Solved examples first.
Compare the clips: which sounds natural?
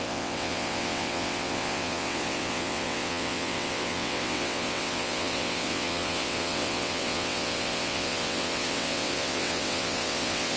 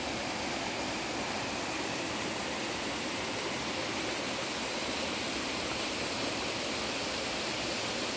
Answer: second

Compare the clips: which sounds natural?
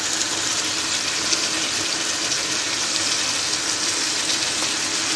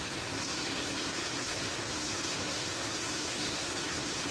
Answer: first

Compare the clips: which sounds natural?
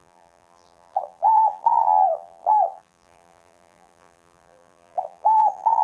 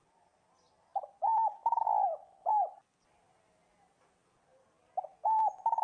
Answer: second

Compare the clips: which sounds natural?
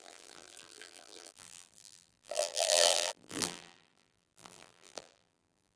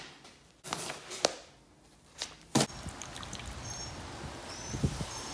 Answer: second